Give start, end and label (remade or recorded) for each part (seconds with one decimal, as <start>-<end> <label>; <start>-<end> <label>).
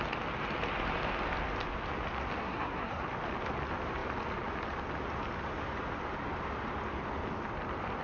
0.0-2.4 recorded; 2.4-3.0 remade; 3.0-8.0 recorded